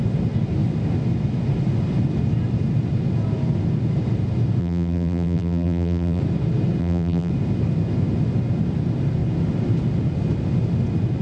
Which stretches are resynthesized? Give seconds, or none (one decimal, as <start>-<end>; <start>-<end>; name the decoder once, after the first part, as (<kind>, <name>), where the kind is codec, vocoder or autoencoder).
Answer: 4.6-6.2 (vocoder, BigVGAN v2); 6.8-7.3